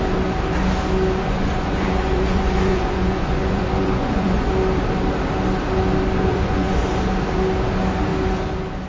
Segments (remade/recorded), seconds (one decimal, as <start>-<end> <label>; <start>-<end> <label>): 0.0-1.2 recorded; 1.2-4.5 remade; 4.5-6.3 recorded; 6.3-6.9 remade; 6.9-8.9 recorded